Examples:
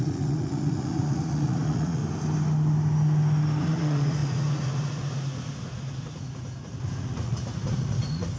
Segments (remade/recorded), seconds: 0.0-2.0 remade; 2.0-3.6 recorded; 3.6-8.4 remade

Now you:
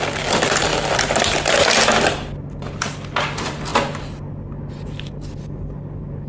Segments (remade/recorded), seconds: 0.0-6.3 recorded

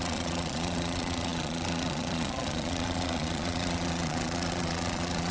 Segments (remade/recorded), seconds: 0.0-5.3 remade

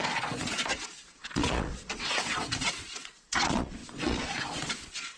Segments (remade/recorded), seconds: 0.0-5.2 remade

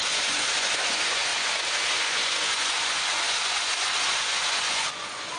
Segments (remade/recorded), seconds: 0.0-5.4 remade

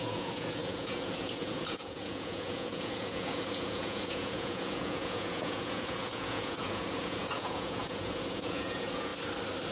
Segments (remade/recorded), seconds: 0.0-9.1 remade; 9.1-9.7 recorded

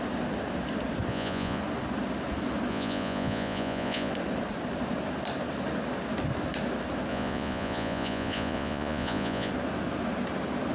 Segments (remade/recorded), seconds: 0.0-1.1 recorded; 1.1-1.6 remade; 1.6-2.7 recorded; 2.7-4.1 remade; 4.1-7.1 recorded; 7.1-9.5 remade; 9.5-10.7 recorded